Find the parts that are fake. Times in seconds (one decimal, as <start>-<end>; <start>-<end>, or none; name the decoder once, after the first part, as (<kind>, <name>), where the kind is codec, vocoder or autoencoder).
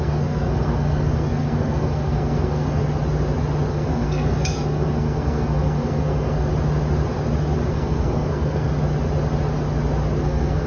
0.0-2.8 (codec, SNAC); 3.7-6.5; 7.7-8.7; 10.2-10.7